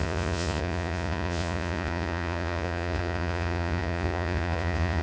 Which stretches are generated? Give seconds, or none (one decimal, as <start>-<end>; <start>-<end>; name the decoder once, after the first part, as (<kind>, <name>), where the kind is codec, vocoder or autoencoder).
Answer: 0.0-5.0 (vocoder, Vocos)